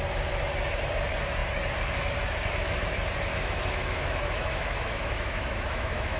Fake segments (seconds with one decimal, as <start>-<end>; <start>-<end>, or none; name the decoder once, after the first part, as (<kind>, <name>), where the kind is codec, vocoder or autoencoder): 3.3-6.2 (autoencoder, DAC-VAE)